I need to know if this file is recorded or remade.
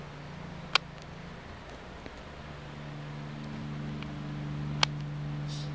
recorded